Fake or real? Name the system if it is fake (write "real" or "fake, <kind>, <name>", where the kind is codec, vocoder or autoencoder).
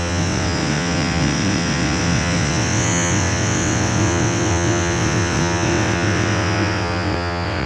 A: fake, vocoder, WaveNeXt